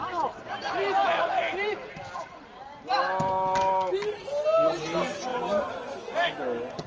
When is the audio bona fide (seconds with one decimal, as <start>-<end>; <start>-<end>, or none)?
0.0-6.9